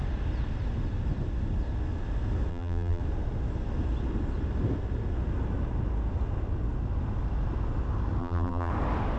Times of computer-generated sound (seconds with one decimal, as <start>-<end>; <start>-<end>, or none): 2.5-3.0; 8.2-8.7